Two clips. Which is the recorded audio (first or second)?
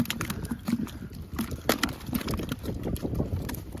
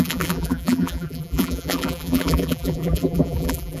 first